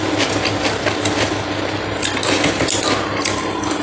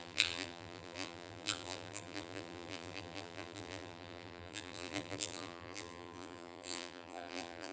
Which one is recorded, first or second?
first